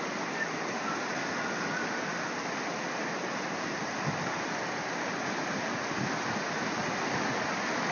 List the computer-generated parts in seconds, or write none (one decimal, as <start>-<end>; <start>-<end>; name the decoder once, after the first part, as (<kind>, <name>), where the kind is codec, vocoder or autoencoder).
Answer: none